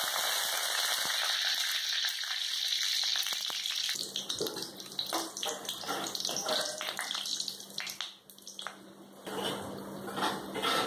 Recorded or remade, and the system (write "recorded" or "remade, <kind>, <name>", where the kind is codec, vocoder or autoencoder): recorded